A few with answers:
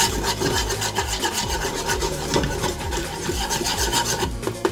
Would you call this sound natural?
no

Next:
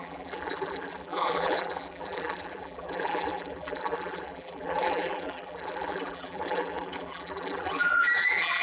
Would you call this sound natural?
no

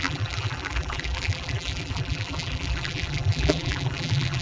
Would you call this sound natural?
no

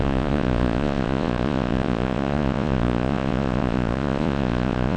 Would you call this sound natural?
no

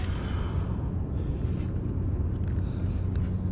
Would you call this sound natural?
yes